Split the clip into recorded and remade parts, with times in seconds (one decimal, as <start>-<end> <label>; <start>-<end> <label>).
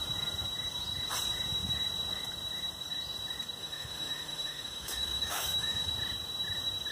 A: 0.0-3.6 recorded; 3.6-5.9 remade; 5.9-6.9 recorded